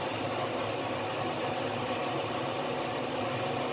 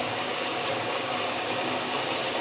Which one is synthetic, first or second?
second